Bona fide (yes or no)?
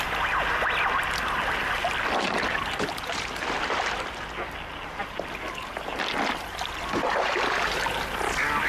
yes